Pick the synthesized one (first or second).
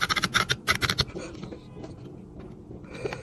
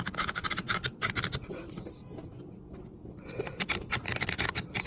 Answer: second